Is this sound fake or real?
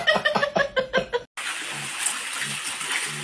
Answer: real